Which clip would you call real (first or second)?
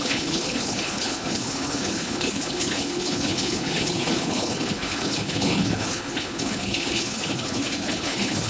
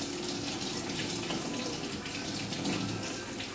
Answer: second